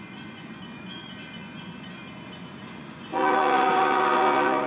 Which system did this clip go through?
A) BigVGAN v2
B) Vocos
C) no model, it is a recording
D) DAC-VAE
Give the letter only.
B